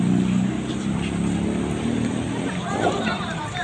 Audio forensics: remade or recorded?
recorded